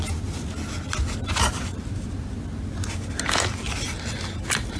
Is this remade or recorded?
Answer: recorded